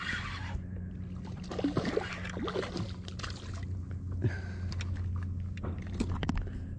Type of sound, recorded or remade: recorded